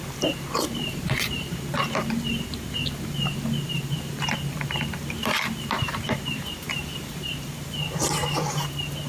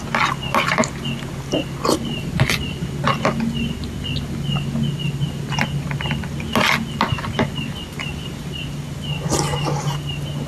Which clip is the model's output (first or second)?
first